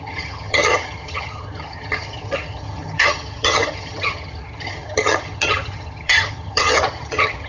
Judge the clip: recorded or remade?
remade